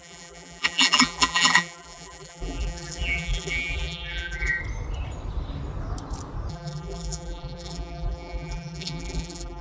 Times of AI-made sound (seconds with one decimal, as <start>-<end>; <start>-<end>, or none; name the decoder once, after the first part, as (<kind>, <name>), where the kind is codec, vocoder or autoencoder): 0.0-4.6 (vocoder, BigVGAN v2); 6.5-9.6